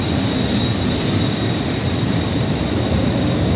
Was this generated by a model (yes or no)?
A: yes